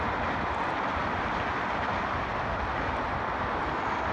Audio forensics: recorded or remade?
recorded